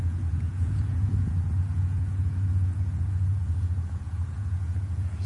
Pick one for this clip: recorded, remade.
remade